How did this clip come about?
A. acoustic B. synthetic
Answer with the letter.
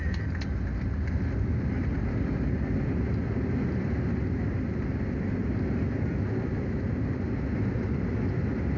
A